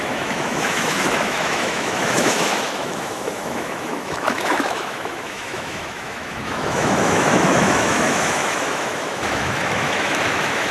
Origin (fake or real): fake